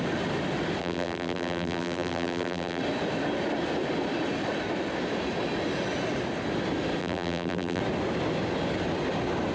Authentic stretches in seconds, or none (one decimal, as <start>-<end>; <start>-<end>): 0.0-0.8; 2.8-7.0; 7.8-9.5